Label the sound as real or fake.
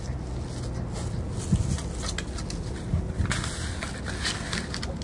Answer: real